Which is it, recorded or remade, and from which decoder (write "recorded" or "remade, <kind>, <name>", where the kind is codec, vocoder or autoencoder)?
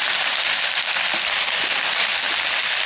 recorded